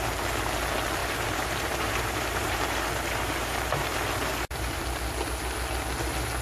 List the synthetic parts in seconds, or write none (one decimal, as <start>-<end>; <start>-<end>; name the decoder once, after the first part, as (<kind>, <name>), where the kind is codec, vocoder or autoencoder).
1.0-4.8 (vocoder, BigVGAN v2)